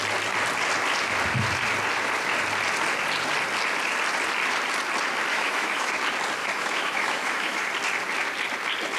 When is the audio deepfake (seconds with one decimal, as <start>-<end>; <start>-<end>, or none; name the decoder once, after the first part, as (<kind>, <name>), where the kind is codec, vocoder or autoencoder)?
5.3-5.9 (autoencoder, DAC-VAE); 6.4-7.6